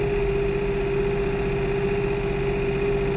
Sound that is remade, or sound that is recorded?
recorded